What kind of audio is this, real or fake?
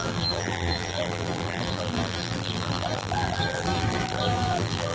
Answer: fake